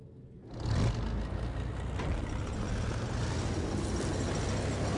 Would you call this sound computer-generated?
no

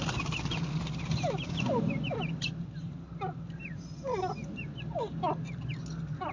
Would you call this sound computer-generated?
no